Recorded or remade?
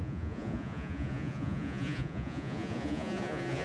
remade